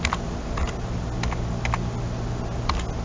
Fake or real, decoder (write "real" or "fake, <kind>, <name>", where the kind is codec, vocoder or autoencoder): real